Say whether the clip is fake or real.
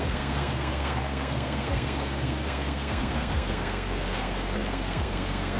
fake